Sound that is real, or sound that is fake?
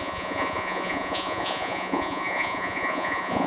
fake